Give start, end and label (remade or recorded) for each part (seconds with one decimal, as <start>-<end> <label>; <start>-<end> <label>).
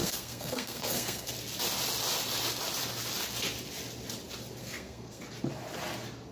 0.0-1.3 remade; 1.3-4.6 recorded; 4.6-5.2 remade; 5.2-6.3 recorded